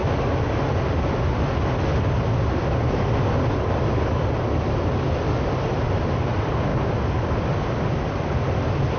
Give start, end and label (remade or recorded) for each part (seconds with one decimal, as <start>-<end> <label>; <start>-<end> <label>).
0.0-9.0 recorded